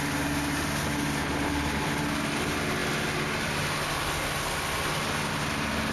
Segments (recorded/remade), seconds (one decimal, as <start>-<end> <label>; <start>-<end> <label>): 0.0-5.9 recorded